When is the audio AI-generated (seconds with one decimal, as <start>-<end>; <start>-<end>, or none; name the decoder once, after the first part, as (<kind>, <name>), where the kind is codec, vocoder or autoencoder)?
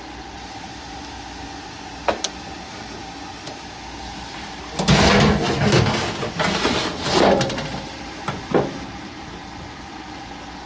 none